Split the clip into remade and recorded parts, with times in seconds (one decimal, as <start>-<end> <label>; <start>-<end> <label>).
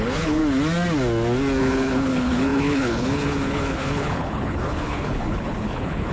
0.0-0.4 remade; 0.4-1.6 recorded; 1.6-6.1 remade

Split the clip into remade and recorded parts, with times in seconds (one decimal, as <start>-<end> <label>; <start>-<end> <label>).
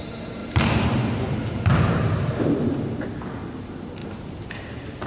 0.0-0.4 recorded; 0.4-3.1 remade; 3.1-4.0 recorded; 4.0-4.5 remade; 4.5-5.1 recorded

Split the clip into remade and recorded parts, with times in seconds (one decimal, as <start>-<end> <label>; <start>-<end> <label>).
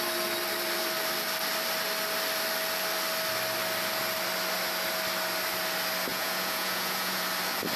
0.0-6.1 recorded; 6.1-7.2 remade; 7.2-7.8 recorded